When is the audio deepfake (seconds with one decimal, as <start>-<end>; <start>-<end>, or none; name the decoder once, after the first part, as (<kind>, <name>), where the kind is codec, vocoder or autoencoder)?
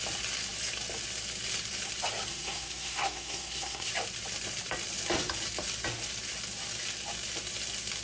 2.3-3.9 (codec, SNAC)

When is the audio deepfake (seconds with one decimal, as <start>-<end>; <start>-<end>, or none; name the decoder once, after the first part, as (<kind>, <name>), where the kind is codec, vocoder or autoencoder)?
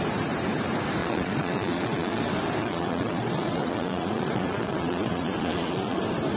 1.0-2.2 (vocoder, Vocos); 2.6-6.0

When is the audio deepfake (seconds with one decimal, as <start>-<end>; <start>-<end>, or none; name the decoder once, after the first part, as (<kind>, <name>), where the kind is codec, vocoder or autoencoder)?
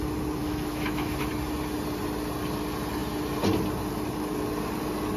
0.4-1.3 (autoencoder, DAC-VAE)